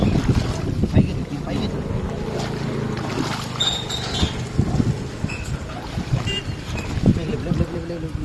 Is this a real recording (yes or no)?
yes